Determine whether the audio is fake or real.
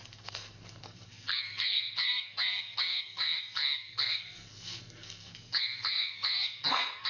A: fake